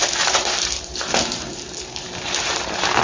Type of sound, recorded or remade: remade